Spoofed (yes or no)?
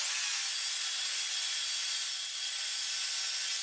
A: no